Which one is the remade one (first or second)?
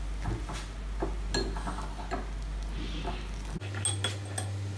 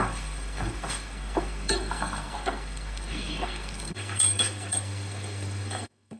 second